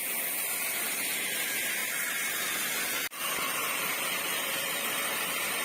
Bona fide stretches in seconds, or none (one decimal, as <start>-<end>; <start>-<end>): 0.0-5.6

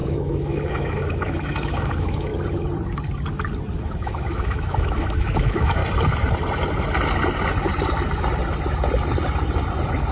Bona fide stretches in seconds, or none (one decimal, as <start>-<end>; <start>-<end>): 2.3-3.8; 5.8-10.1

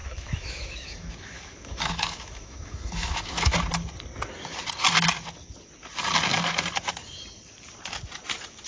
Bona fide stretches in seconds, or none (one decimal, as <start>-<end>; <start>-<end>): 3.5-8.7

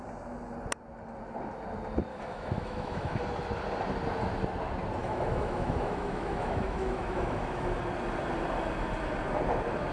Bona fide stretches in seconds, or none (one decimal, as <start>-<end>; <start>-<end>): 0.0-2.1; 3.2-5.0; 7.8-9.9

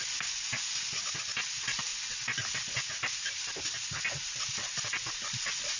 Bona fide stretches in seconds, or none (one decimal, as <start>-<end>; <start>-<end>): 0.0-5.8

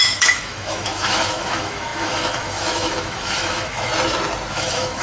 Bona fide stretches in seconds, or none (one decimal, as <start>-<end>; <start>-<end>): 3.9-4.5

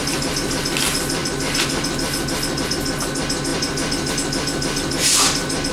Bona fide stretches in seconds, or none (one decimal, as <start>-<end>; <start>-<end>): 0.0-5.7

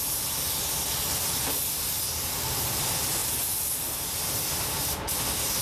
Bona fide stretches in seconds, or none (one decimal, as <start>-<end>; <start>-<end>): 0.0-5.6